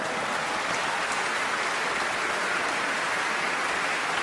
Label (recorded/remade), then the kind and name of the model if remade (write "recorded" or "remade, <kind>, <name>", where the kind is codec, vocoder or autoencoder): recorded